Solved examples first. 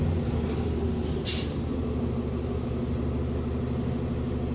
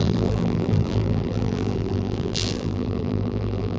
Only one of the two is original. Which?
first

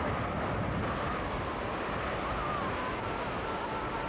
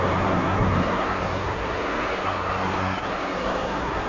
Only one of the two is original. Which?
first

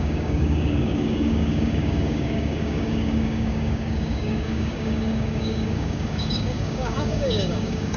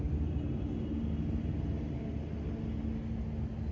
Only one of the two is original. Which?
second